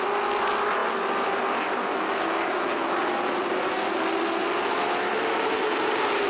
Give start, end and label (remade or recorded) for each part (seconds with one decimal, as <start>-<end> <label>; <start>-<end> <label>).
0.0-6.3 recorded